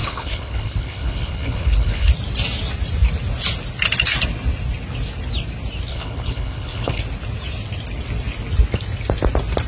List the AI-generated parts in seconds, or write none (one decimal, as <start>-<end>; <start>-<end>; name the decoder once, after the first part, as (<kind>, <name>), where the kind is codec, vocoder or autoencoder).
0.0-2.1 (codec, HILCodec); 5.9-7.0